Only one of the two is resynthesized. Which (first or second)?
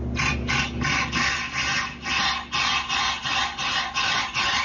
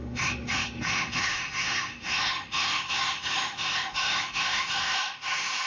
second